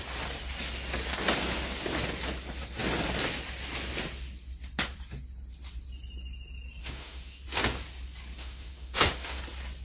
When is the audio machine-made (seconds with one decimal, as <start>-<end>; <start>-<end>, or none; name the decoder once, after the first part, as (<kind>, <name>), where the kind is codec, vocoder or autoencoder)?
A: 6.8-7.4 (autoencoder, DAC-VAE); 8.4-9.4